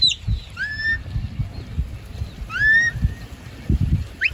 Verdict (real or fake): real